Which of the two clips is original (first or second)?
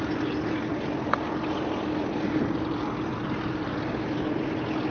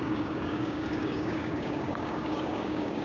first